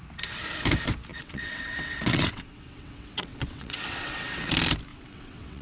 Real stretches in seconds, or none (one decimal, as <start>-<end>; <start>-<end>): 0.0-1.1; 4.5-4.9